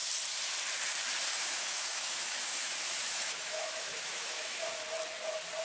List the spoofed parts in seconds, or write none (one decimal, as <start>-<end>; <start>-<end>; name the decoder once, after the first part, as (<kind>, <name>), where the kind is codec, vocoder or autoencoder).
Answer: 1.3-4.7 (autoencoder, DAC-VAE)